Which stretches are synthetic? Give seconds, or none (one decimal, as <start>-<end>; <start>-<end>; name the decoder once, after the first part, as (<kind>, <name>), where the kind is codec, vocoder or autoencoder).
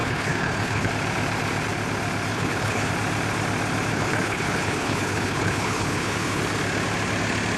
0.0-0.9 (codec, HILCodec); 2.3-2.9; 3.9-6.4